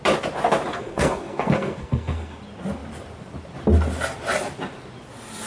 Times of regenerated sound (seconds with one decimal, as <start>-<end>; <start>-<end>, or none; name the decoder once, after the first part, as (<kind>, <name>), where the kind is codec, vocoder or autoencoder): 0.7-2.4 (codec, SNAC)